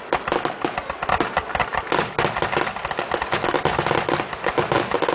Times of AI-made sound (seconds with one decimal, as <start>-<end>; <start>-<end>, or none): none